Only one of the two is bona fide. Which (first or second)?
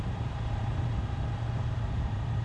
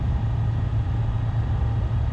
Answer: second